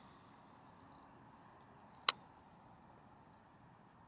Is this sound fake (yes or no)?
no